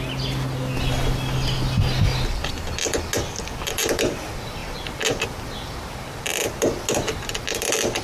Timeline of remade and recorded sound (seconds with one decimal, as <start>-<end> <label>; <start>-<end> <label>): 0.0-8.0 recorded